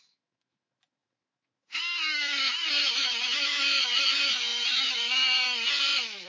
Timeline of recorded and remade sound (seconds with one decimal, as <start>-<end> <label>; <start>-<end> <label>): 0.0-6.3 remade